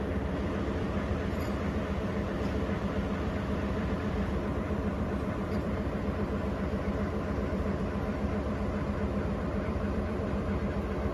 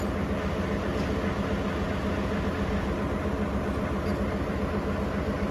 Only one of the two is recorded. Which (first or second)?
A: second